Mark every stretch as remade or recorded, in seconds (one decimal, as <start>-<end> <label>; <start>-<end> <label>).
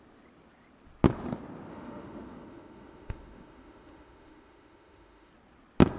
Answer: 0.0-1.7 recorded; 1.7-5.3 remade; 5.3-6.0 recorded